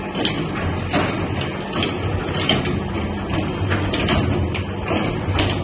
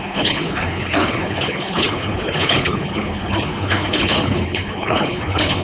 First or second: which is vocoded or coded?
second